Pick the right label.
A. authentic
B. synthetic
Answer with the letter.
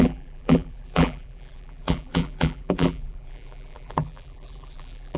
B